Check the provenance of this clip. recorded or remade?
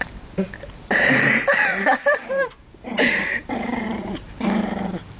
remade